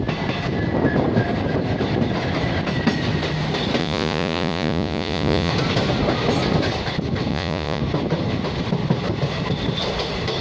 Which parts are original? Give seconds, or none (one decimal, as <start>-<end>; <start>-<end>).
0.0-3.8; 5.5-7.3; 7.8-10.4